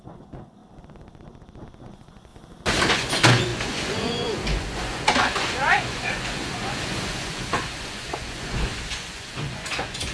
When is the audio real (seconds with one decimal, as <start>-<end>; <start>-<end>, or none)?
0.6-1.8; 2.3-2.9